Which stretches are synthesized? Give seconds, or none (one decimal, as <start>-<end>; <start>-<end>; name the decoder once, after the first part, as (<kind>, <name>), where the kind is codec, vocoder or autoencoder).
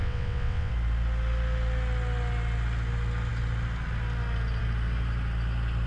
0.0-0.7 (vocoder, WaveNeXt)